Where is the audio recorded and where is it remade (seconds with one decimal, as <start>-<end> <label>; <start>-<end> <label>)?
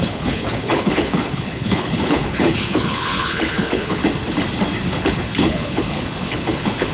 0.0-4.0 remade; 4.0-4.9 recorded; 4.9-6.9 remade